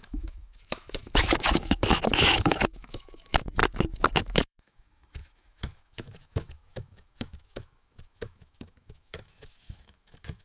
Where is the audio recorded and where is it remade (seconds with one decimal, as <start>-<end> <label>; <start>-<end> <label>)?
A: 0.0-3.6 remade; 3.6-4.1 recorded; 4.1-10.4 remade